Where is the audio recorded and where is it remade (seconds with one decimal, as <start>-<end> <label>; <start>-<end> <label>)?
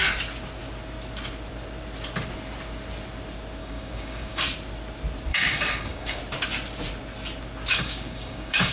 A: 0.0-3.6 recorded; 3.6-4.4 remade; 4.4-5.3 recorded; 5.3-6.2 remade; 6.2-7.7 recorded; 7.7-8.7 remade